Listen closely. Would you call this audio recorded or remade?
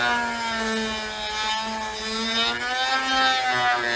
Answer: recorded